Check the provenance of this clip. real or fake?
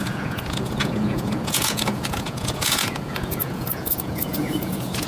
fake